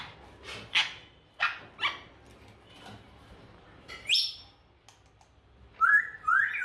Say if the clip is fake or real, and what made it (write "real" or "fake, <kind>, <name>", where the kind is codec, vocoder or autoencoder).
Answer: real